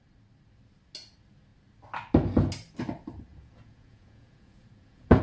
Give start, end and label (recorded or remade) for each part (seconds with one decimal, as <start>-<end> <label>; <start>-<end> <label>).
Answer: 0.0-3.3 recorded; 3.3-5.2 remade